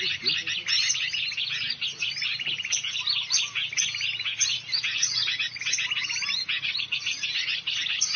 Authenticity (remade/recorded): recorded